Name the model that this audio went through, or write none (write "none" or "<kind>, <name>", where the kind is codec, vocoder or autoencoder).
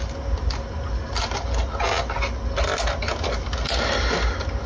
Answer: none